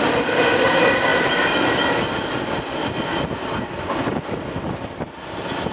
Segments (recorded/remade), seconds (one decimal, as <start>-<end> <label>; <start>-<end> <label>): 0.0-5.7 recorded